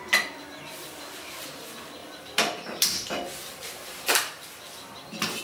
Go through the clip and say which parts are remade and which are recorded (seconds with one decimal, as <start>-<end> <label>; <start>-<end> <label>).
0.0-2.0 recorded; 2.0-5.4 remade